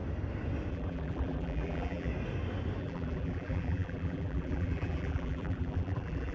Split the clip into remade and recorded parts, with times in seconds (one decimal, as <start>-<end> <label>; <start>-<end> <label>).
0.0-0.7 recorded; 0.7-2.1 remade; 2.1-2.8 recorded; 2.8-6.3 remade